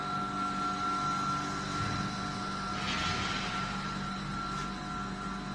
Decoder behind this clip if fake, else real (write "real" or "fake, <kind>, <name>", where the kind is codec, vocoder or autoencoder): real